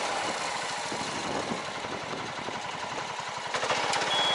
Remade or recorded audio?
recorded